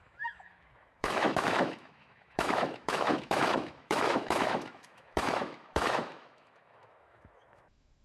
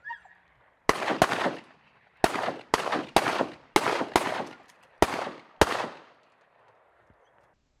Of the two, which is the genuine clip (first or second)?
second